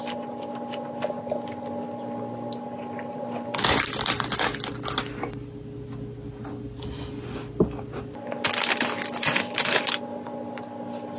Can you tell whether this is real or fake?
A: real